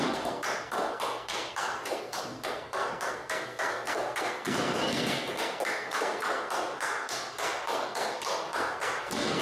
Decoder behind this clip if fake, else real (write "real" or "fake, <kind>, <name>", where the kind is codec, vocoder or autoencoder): fake, codec, SNAC